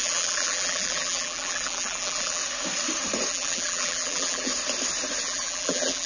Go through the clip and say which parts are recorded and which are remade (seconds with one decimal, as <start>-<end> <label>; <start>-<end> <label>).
0.0-2.4 remade; 2.4-3.3 recorded; 3.3-4.5 remade; 4.5-5.2 recorded; 5.2-6.1 remade